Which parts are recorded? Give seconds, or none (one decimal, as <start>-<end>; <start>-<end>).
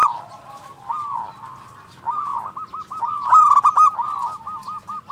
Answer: 0.0-5.1